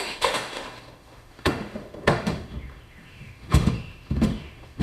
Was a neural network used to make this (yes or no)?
yes